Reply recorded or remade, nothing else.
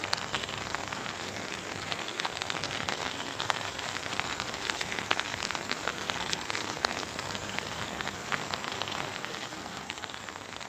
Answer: remade